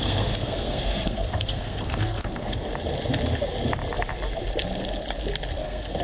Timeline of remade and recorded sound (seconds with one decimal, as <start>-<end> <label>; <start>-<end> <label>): 0.0-2.7 remade; 2.7-5.6 recorded; 5.6-6.0 remade